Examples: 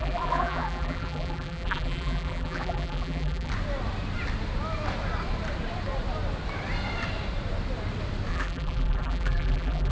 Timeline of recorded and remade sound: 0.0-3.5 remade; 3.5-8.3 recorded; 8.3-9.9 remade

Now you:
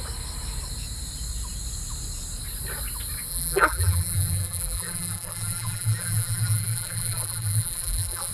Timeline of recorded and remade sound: 0.0-3.3 recorded; 3.3-8.3 remade

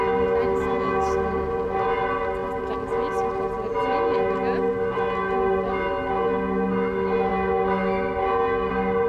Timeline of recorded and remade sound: 0.0-9.1 recorded

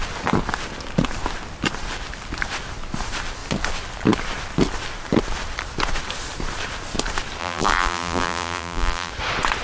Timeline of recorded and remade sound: 0.0-7.4 recorded; 7.4-9.1 remade; 9.1-9.6 recorded